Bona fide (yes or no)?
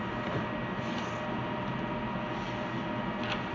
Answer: yes